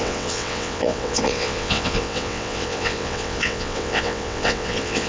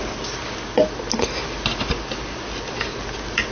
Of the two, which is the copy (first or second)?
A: first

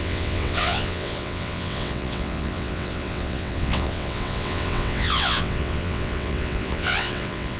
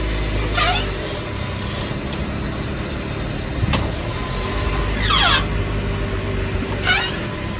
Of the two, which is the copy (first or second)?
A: first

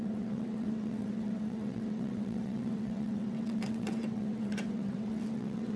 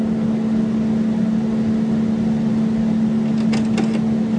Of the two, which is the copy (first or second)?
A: first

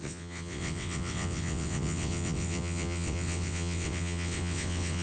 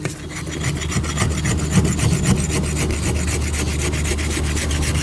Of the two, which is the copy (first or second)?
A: first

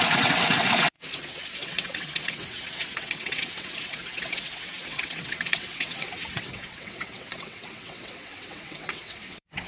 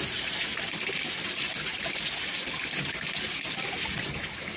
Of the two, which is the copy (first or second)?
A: first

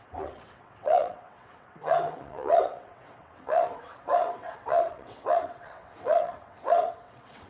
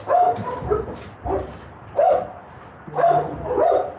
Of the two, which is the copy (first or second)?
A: first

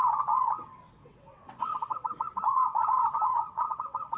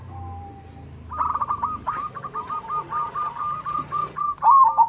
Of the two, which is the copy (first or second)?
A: first